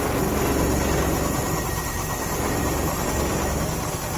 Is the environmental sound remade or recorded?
recorded